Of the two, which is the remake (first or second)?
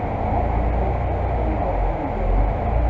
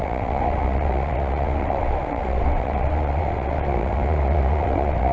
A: second